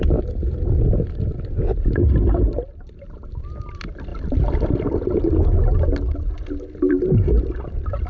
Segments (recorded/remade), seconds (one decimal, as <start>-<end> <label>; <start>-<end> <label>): 0.0-8.1 recorded